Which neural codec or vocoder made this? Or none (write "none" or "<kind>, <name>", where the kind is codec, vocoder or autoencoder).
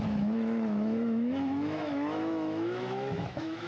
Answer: autoencoder, DAC-VAE